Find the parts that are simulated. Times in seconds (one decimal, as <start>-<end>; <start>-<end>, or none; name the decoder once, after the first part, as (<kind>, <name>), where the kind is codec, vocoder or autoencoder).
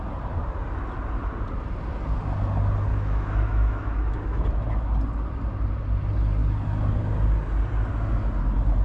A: 2.9-4.4 (autoencoder, DAC-VAE)